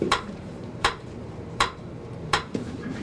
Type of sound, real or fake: fake